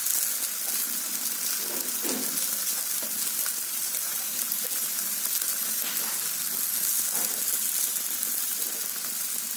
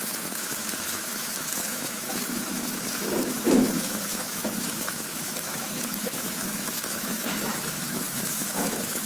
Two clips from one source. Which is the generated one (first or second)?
second